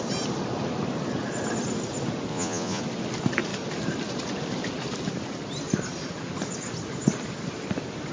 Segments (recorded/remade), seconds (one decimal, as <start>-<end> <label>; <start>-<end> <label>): 0.0-2.3 recorded; 2.3-2.8 remade; 2.8-8.1 recorded